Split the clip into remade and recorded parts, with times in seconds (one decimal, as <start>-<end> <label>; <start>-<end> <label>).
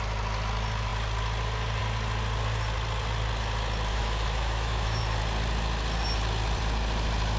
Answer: 0.0-3.9 recorded; 3.9-5.0 remade; 5.0-7.4 recorded